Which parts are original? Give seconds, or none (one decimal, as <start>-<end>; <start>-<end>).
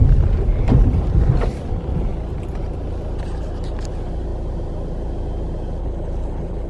0.0-5.8